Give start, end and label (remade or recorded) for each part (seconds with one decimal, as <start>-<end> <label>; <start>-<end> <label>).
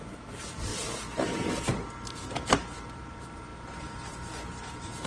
0.0-0.7 remade; 0.7-1.7 recorded; 1.7-5.1 remade